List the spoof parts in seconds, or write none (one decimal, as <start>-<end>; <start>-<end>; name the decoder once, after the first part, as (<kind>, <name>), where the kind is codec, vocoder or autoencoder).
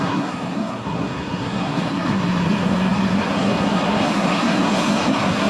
0.0-5.5 (codec, SNAC)